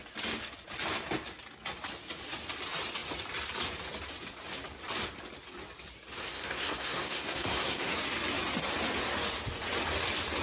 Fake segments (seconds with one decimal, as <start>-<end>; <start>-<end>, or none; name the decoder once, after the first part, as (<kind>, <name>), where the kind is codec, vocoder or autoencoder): 6.2-7.9 (codec, SNAC)